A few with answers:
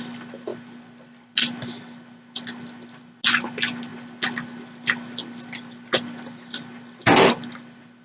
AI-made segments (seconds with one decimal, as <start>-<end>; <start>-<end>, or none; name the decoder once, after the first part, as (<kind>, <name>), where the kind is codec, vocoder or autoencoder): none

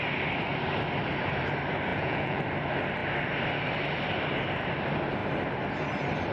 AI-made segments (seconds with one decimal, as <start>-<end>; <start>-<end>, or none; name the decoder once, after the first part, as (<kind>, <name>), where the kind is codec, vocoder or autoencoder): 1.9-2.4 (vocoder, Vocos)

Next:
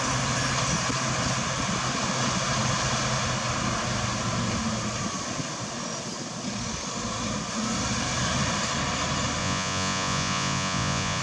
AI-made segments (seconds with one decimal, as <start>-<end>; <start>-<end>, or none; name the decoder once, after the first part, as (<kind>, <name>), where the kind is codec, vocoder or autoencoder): 9.4-11.2 (vocoder, Vocos)

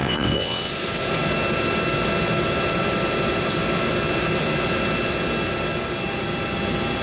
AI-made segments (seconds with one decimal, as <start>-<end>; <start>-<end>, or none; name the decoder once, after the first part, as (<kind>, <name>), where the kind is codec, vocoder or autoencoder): 0.0-0.7 (vocoder, WaveNeXt)

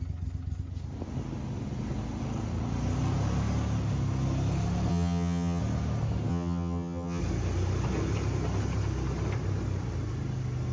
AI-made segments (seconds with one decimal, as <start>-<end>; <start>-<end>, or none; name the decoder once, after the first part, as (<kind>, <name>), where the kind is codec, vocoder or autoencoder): 4.9-5.6 (vocoder, HiFi-GAN); 6.3-7.2

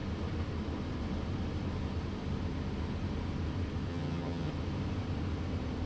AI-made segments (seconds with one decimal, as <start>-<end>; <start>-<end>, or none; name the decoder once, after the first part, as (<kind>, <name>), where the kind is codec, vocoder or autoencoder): 3.9-4.5 (vocoder, HiFi-GAN)